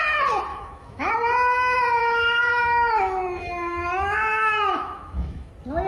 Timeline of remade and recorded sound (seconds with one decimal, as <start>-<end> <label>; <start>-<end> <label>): 0.0-0.5 recorded; 0.5-1.1 remade; 1.1-2.0 recorded; 2.0-5.5 remade; 5.5-5.9 recorded